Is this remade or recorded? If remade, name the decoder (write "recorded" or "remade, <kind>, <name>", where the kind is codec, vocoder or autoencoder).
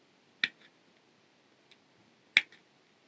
recorded